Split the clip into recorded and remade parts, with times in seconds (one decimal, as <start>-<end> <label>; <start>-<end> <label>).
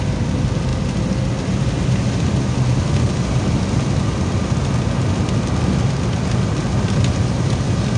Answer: 0.0-8.0 recorded